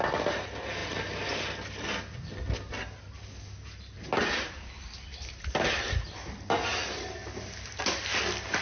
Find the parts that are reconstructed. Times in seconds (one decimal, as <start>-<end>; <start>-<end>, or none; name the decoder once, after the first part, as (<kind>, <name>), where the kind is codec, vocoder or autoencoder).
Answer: none